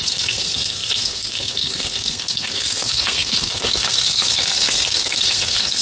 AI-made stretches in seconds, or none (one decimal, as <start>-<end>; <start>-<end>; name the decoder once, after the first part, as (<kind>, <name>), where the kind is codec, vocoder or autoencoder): 0.0-5.8 (codec, SNAC)

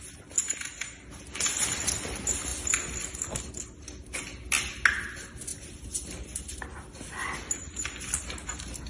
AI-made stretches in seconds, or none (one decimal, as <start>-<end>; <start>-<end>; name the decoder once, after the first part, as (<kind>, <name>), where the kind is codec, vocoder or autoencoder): 2.5-3.5 (vocoder, BigVGAN v2); 5.5-8.1

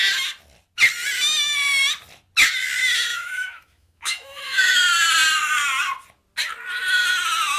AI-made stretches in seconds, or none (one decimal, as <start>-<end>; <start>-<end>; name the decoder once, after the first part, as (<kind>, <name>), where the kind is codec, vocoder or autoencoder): 3.1-4.8 (autoencoder, DAC-VAE)

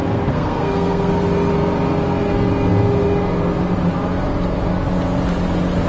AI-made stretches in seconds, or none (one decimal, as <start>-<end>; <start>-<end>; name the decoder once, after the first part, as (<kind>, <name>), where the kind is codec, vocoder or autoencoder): 0.0-1.1 (codec, SNAC)

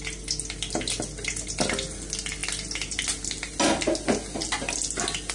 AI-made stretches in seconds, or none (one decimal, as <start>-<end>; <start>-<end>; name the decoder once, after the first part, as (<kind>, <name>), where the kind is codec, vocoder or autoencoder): none

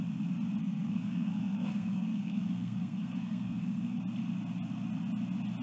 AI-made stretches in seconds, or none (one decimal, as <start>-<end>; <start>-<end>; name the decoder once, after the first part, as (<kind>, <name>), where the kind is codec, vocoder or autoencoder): 0.6-4.0 (codec, SNAC)